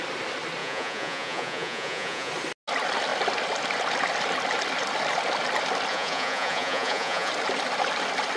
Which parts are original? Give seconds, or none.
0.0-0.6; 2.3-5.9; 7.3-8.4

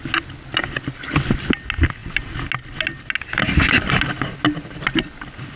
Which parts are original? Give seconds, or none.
0.0-5.6

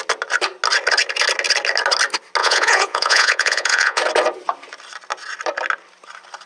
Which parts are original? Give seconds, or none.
0.0-2.4; 4.0-6.5

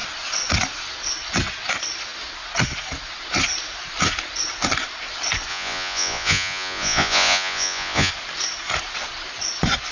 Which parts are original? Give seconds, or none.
0.0-5.5; 8.1-9.9

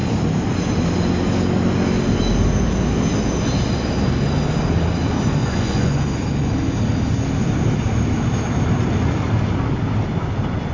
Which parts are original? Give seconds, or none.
0.0-5.4; 6.0-10.7

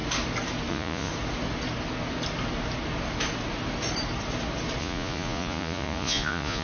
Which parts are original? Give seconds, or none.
0.0-0.7; 1.1-4.8

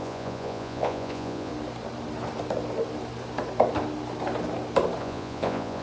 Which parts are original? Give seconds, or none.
1.5-5.0